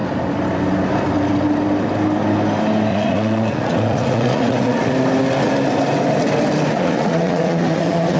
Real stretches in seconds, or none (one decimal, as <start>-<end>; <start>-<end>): 0.0-2.9; 4.9-6.7